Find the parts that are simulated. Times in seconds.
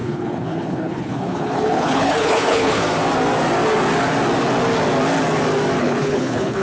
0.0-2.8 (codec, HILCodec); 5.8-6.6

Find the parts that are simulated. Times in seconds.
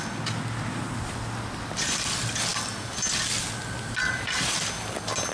none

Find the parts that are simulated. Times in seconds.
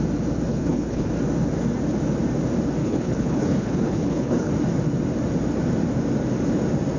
0.5-1.1 (codec, HILCodec); 2.8-4.5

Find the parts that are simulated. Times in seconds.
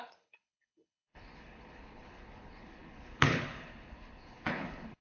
0.0-5.0 (codec, HILCodec)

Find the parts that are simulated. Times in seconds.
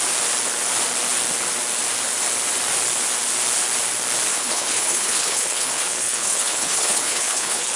4.3-7.8 (codec, HILCodec)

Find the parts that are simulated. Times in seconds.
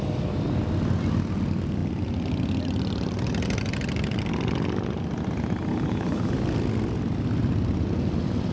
5.7-6.3 (codec, HILCodec)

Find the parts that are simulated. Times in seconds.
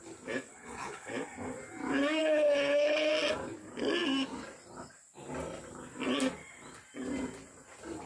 0.5-1.1 (codec, HILCodec); 2.2-3.1